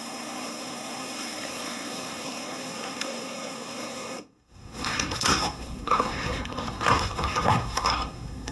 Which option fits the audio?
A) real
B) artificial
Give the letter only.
B